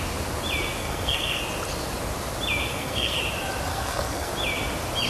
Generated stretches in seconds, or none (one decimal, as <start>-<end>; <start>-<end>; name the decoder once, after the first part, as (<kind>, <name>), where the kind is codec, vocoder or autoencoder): 0.8-1.4 (codec, SNAC); 2.7-3.2; 3.7-4.3